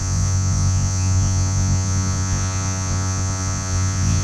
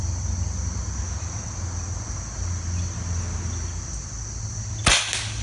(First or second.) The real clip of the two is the second